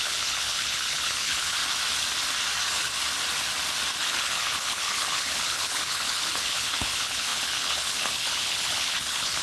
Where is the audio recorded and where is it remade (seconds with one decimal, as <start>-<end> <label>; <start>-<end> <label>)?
0.0-1.6 remade; 1.6-4.0 recorded; 4.0-9.4 remade